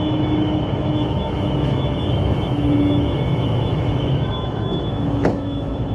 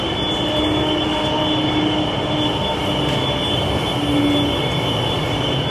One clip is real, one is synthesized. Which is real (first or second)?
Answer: second